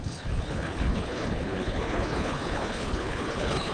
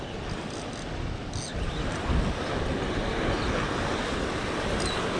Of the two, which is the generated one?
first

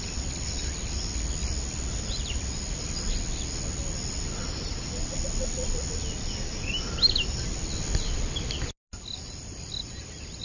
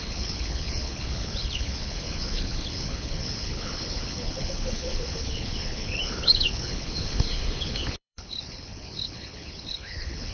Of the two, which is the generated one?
second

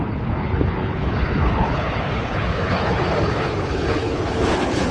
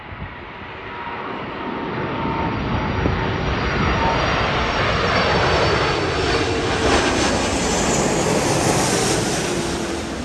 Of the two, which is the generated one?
first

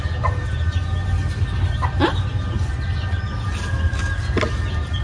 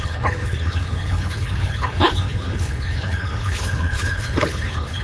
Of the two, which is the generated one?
second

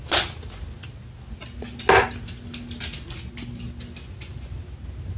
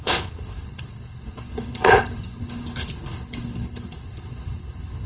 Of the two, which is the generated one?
second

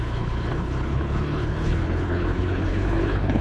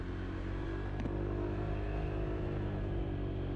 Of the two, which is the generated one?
first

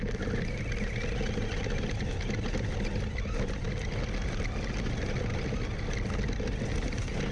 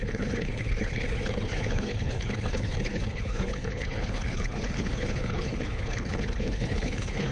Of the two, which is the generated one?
second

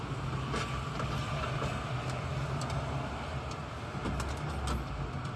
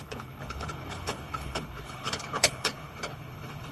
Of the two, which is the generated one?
second